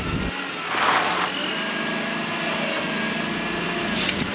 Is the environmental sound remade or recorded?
recorded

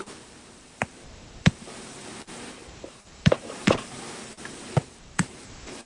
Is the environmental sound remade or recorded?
remade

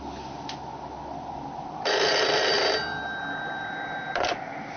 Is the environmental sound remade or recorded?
recorded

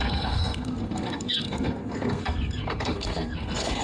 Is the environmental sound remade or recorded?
remade